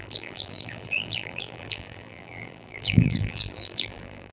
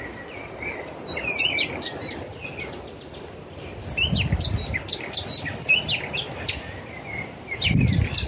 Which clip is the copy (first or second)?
first